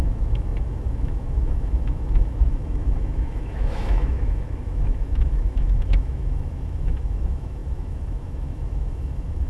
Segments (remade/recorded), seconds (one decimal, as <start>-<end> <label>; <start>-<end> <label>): 0.0-9.5 remade